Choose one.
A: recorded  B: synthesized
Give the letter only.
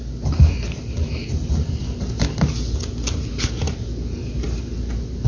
A